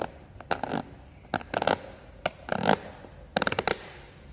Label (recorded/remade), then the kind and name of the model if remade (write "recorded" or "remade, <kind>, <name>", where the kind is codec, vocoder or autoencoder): recorded